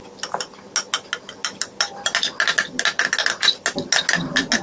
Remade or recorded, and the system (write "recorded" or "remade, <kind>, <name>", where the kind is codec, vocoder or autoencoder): recorded